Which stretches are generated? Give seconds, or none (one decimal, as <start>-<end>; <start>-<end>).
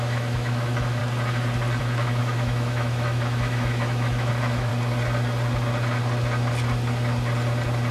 0.0-1.0; 1.8-4.7